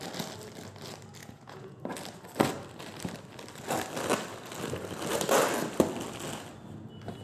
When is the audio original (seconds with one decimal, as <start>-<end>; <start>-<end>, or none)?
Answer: 0.0-1.2; 1.8-7.2